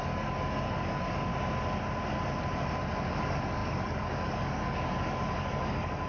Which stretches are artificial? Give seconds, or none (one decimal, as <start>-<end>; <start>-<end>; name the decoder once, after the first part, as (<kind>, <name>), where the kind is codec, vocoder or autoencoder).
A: 0.0-1.3 (codec, DAC); 3.2-6.1